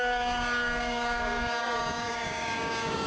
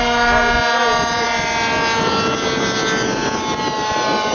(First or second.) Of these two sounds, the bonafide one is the second